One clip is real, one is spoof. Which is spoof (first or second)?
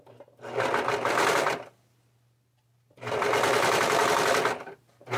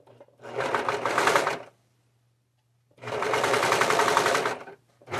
second